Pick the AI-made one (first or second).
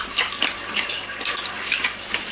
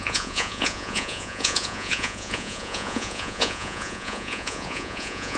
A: second